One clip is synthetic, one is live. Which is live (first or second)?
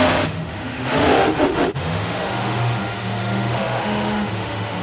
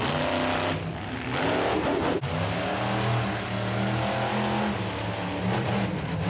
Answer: second